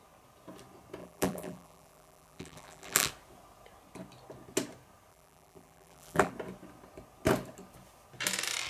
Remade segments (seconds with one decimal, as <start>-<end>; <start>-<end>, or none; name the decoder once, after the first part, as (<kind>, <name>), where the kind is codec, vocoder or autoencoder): 1.0-3.1 (vocoder, BigVGAN v2); 5.1-6.3